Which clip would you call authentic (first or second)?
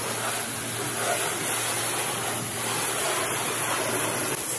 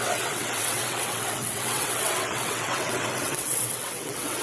first